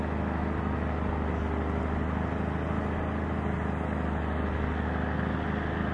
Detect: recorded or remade recorded